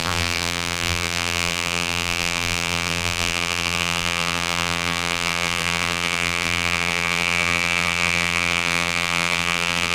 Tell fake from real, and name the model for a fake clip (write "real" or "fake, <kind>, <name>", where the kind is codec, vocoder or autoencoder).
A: fake, vocoder, BigVGAN v2